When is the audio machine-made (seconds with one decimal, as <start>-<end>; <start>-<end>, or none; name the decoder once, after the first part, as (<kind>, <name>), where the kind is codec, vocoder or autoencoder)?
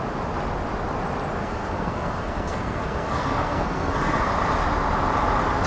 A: 1.4-4.3 (codec, SNAC)